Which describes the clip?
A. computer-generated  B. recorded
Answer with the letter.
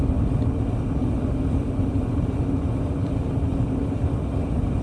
B